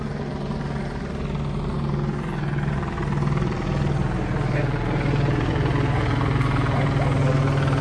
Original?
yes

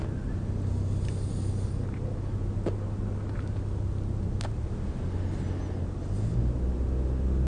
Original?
yes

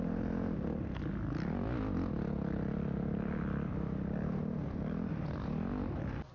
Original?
yes